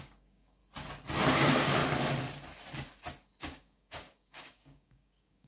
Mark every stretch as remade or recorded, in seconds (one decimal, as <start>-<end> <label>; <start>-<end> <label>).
0.0-0.6 remade; 0.6-1.3 recorded; 1.3-1.8 remade; 1.8-3.4 recorded; 3.4-5.5 remade